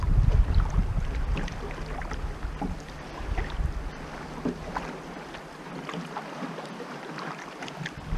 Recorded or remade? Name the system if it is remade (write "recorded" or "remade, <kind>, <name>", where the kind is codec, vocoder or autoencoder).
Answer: recorded